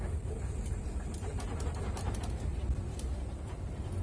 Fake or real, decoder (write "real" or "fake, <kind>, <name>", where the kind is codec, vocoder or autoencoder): real